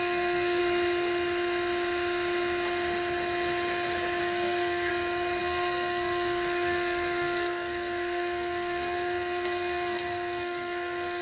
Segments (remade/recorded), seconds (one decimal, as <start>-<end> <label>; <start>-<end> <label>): 0.0-0.6 remade; 0.6-4.2 recorded; 4.2-4.9 remade; 4.9-5.4 recorded; 5.4-11.2 remade